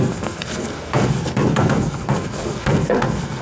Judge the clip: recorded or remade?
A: remade